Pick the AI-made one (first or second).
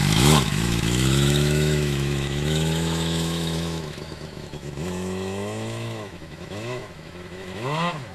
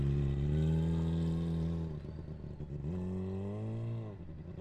first